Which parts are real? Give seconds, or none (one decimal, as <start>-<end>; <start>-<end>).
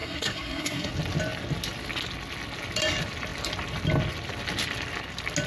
0.9-5.5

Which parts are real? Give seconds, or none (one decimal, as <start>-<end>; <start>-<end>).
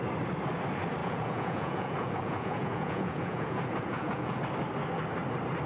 0.0-1.0; 4.4-5.7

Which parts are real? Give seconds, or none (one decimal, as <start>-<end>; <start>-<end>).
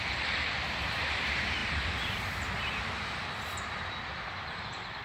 none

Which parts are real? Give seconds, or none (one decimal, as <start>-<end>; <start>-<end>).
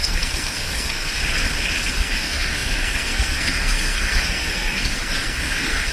1.2-1.9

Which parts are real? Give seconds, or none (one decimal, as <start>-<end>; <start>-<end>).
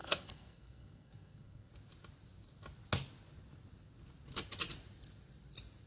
1.7-5.9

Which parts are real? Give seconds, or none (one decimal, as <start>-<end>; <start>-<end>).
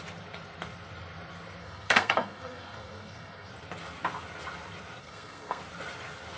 0.0-1.6; 3.5-5.0; 5.6-6.4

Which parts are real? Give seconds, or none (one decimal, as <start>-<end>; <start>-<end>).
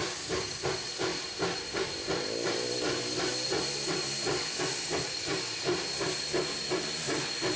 0.6-7.6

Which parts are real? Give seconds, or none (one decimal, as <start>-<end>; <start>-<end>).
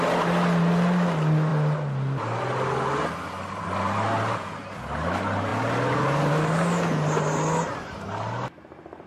0.0-9.1